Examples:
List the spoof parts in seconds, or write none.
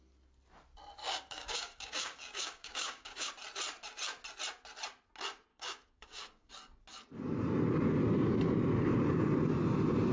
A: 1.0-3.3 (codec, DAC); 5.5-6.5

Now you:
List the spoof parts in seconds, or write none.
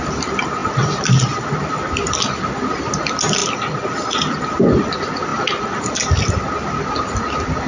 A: none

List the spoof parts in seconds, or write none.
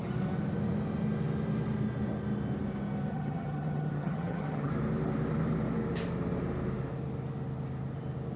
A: 3.1-4.7 (vocoder, HiFi-GAN)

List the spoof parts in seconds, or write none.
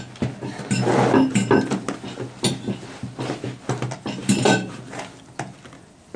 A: 4.2-5.2 (vocoder, BigVGAN v2)